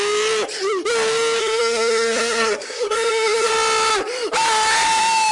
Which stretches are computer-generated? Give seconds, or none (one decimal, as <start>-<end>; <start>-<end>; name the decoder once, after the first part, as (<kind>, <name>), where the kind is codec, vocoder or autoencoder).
1.4-3.5 (codec, SNAC)